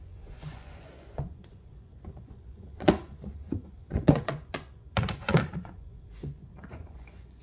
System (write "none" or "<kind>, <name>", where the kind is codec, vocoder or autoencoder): vocoder, Vocos